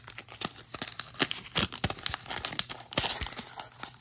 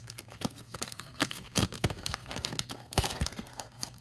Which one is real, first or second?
first